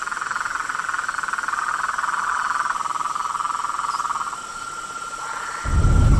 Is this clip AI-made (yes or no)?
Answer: no